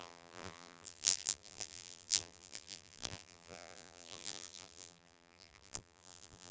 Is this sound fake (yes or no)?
yes